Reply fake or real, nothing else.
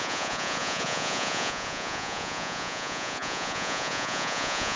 fake